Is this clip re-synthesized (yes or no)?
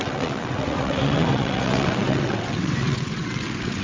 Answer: yes